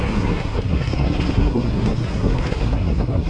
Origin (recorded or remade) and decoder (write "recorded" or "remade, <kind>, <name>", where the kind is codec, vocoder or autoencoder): remade, codec, SNAC